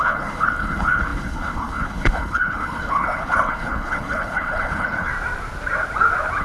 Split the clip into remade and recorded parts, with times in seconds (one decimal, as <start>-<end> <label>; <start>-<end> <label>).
0.0-5.1 remade; 5.1-6.4 recorded